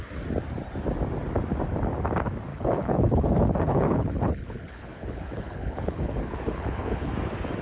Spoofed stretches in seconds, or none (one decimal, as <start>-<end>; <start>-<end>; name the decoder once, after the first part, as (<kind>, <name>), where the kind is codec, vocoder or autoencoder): 2.5-7.1 (codec, HILCodec)